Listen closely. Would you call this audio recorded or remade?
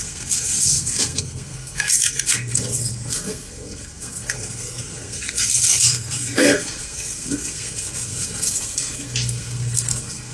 remade